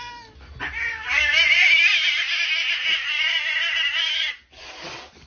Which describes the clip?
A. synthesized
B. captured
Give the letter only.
B